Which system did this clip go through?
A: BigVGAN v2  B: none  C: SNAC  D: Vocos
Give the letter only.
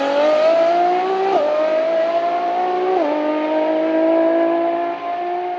B